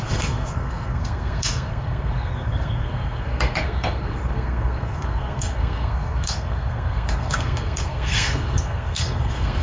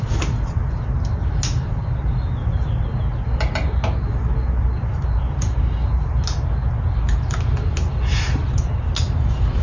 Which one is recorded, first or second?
second